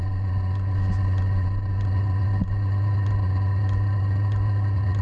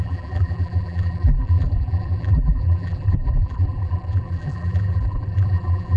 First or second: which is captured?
first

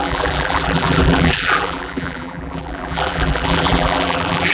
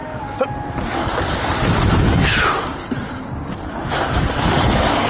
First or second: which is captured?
second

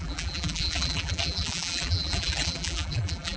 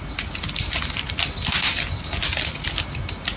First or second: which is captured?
second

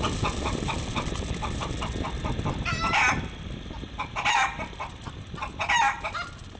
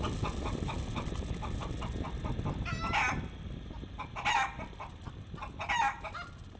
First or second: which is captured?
second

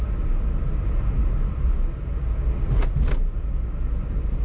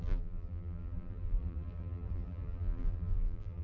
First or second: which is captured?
first